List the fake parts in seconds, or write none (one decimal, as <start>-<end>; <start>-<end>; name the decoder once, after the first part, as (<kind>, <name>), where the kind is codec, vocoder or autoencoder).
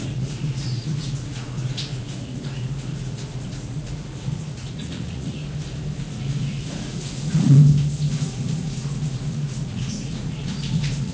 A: 0.0-5.4 (vocoder, Vocos); 6.0-7.6; 8.1-11.1